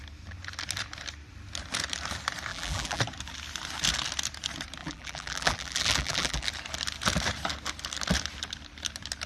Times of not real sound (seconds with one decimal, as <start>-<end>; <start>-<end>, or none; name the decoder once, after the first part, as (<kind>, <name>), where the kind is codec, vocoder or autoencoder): 2.5-3.0 (vocoder, BigVGAN v2); 4.8-6.5

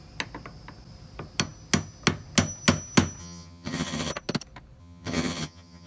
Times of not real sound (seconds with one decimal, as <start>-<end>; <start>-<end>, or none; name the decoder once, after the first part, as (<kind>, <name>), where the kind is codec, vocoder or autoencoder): 3.2-4.1 (vocoder, HiFi-GAN); 4.8-5.9

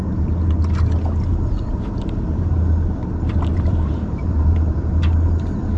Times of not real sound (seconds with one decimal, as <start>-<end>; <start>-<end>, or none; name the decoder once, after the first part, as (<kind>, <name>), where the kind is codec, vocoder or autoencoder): 1.3-2.5 (vocoder, BigVGAN v2); 3.5-4.8

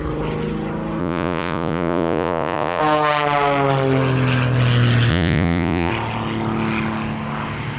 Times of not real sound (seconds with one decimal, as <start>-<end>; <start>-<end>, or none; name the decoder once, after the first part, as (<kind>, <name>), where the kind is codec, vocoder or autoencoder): 1.0-2.8 (vocoder, Vocos); 5.1-5.9

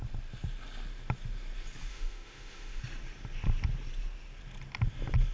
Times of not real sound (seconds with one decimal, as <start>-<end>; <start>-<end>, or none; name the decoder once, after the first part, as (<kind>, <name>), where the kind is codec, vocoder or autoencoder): 1.9-2.8 (autoencoder, DAC-VAE)

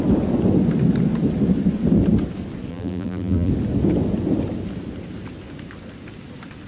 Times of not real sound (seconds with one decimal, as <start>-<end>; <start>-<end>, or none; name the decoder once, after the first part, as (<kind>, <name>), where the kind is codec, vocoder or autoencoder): 2.7-3.5 (vocoder, BigVGAN v2)

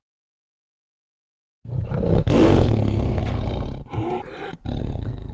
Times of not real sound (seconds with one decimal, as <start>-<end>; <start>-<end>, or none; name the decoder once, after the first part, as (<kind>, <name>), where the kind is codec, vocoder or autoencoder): 0.0-1.3 (codec, SNAC); 2.0-3.2; 4.8-5.3

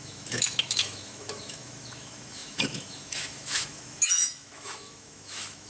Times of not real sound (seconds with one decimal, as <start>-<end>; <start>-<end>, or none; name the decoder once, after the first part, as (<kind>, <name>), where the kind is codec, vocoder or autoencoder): 0.0-5.7 (autoencoder, DAC-VAE)